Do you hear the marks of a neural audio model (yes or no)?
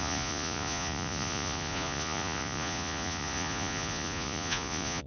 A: yes